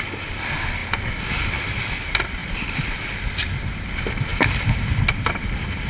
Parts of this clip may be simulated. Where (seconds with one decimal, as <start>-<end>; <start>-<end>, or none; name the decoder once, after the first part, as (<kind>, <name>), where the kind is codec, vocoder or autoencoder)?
none

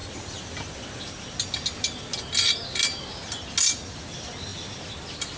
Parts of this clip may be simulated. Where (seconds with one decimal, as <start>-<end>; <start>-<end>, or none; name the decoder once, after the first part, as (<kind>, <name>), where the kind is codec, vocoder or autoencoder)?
none